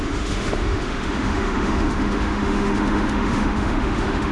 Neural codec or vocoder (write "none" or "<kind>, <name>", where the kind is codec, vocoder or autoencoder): autoencoder, DAC-VAE